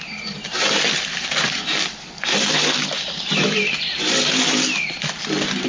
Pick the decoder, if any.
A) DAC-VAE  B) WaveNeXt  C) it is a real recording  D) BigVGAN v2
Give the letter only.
D